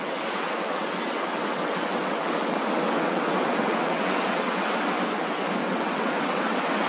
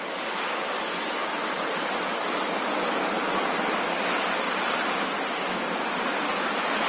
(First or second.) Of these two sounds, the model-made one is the first